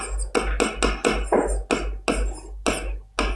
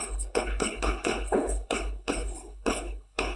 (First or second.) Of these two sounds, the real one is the first